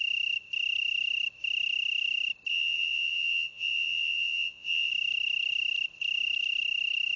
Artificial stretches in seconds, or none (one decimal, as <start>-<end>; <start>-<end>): 2.5-4.9